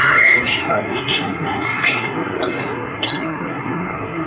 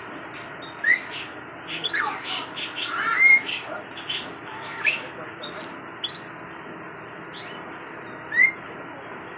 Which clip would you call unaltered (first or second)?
second